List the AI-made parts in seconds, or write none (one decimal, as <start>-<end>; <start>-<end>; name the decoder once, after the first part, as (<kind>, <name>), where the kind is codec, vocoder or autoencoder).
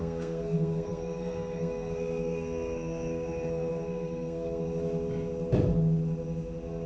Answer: 0.0-4.6 (codec, SNAC)